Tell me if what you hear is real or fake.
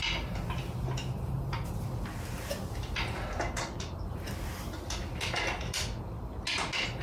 real